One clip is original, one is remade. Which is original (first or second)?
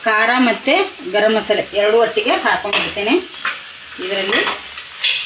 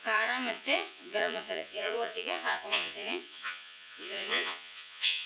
first